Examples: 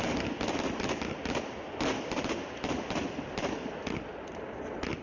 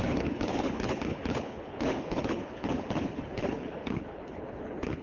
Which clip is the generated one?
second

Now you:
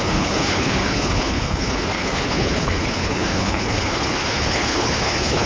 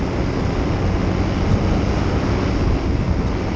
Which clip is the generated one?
first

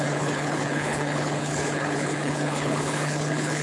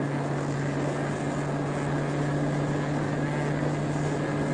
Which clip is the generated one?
first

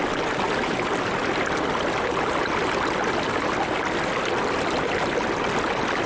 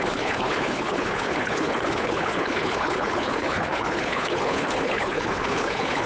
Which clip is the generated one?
second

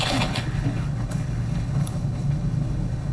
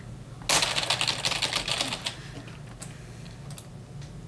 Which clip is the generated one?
first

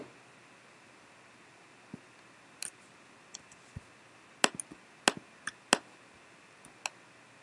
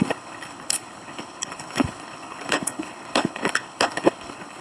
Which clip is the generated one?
second